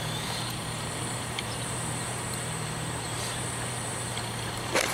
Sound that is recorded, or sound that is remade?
remade